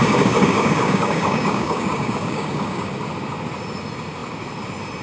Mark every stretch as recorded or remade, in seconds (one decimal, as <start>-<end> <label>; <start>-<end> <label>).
0.0-2.9 remade; 2.9-5.0 recorded